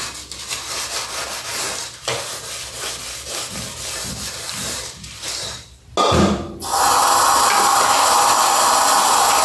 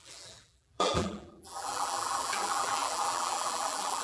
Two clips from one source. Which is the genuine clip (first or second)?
first